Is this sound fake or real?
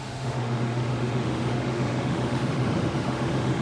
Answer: fake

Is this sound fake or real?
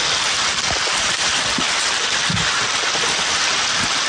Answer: real